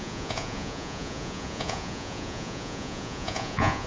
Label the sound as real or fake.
fake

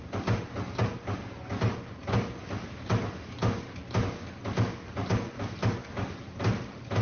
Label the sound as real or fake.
real